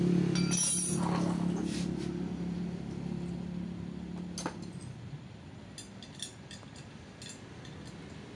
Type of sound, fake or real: real